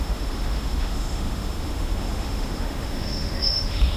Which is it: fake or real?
fake